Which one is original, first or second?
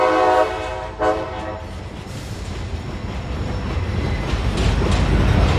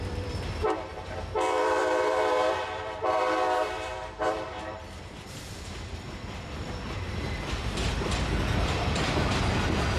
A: first